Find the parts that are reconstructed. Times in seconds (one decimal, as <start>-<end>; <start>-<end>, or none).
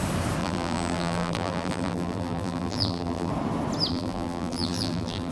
0.4-3.3; 3.9-5.3